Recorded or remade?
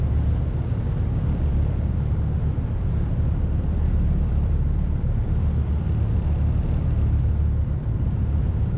remade